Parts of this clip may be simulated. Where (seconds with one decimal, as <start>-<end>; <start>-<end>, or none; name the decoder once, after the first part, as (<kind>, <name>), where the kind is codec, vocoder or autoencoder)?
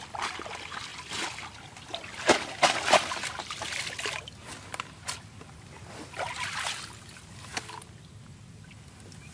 none